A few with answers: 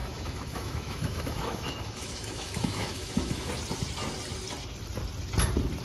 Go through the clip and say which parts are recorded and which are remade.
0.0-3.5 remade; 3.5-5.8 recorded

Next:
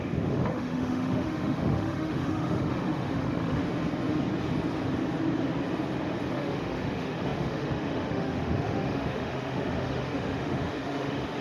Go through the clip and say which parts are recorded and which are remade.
0.0-3.6 remade; 3.6-6.3 recorded; 6.3-11.4 remade

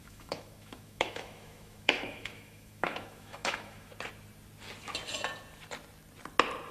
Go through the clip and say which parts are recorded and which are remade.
0.0-3.9 remade; 3.9-6.7 recorded

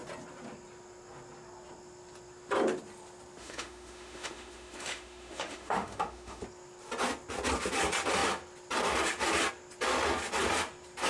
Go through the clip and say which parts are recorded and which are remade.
0.0-3.4 recorded; 3.4-6.4 remade; 6.4-11.1 recorded

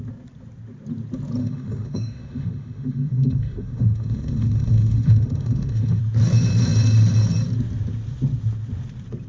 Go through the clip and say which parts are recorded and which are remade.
0.0-1.4 recorded; 1.4-6.0 remade; 6.0-9.3 recorded

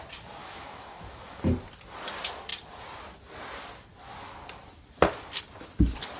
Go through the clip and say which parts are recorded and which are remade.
0.0-0.4 recorded; 0.4-1.4 remade; 1.4-6.2 recorded